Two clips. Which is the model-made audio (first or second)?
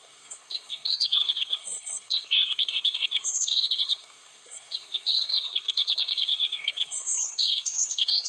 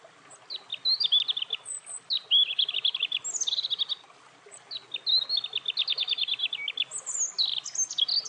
first